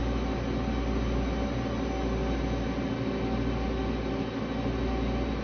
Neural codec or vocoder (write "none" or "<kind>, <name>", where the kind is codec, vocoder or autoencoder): none